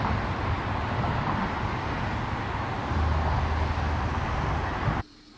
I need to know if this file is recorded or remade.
recorded